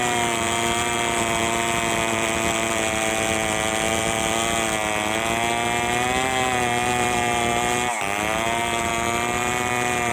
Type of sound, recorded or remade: recorded